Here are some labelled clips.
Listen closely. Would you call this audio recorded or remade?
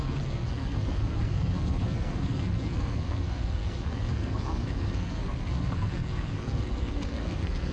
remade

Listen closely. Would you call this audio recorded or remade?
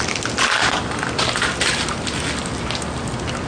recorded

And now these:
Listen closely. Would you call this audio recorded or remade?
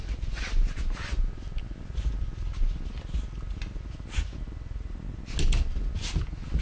recorded